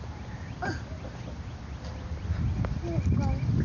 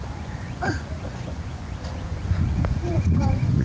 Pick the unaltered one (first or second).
first